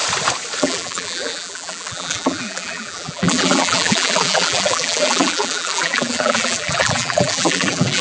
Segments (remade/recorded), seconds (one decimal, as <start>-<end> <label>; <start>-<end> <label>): 0.0-0.6 recorded; 0.6-8.0 remade